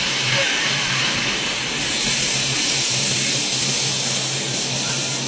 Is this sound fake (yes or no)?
no